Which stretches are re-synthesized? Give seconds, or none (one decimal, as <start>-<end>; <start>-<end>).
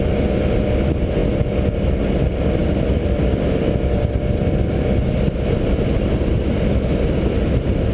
none